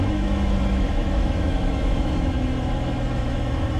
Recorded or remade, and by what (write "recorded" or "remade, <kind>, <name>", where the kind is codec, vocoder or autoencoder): remade, autoencoder, DAC-VAE